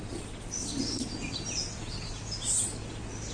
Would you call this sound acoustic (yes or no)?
yes